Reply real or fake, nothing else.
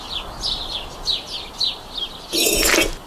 real